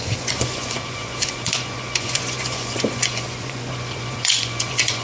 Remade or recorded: remade